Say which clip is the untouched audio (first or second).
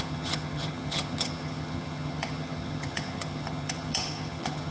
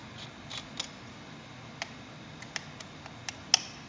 second